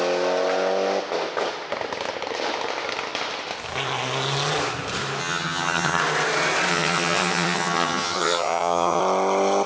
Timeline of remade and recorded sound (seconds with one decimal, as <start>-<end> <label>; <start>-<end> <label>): 0.0-5.2 recorded; 5.2-6.0 remade; 6.0-6.7 recorded; 6.7-9.0 remade; 9.0-9.7 recorded